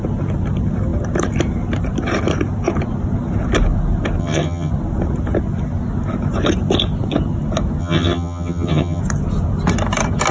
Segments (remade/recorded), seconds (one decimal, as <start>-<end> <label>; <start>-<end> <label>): 0.0-4.2 recorded; 4.2-4.7 remade; 4.7-7.8 recorded; 7.8-9.0 remade; 9.0-10.3 recorded